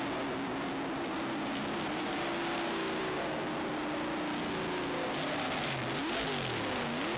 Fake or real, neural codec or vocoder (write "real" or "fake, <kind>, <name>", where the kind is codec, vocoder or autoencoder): real